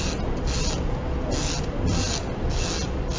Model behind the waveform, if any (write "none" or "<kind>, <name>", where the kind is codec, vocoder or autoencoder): none